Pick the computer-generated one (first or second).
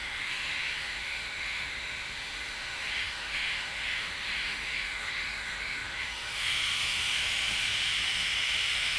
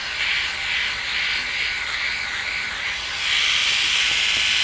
first